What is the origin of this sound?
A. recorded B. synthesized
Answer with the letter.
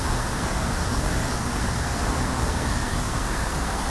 B